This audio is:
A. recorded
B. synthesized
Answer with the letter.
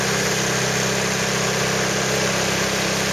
A